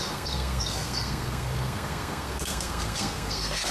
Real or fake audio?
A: fake